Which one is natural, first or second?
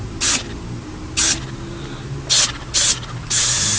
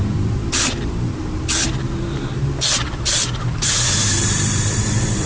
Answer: first